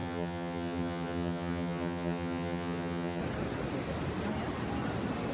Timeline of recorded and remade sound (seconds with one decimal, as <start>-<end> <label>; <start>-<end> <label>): 0.0-3.2 remade; 3.2-5.3 recorded